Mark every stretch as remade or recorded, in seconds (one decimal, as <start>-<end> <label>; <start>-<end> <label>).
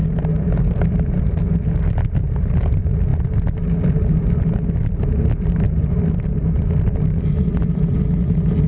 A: 0.0-8.7 recorded